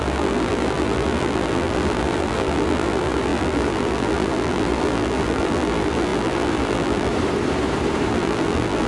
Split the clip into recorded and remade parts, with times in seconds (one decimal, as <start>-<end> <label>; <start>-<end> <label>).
0.0-7.1 remade; 7.1-8.1 recorded; 8.1-8.9 remade